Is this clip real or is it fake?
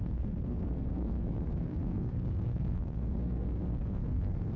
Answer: fake